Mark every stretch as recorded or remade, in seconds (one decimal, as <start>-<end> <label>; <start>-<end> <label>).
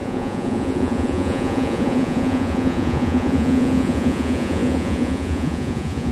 0.0-6.1 remade